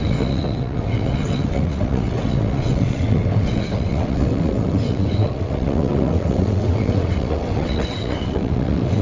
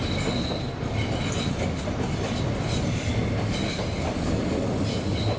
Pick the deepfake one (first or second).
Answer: first